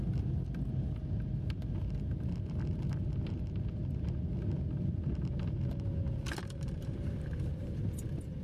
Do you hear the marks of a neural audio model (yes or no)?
no